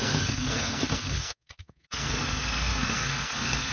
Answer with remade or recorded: remade